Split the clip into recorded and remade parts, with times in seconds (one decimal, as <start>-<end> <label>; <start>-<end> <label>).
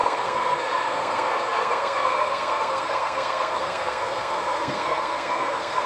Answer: 0.0-5.9 remade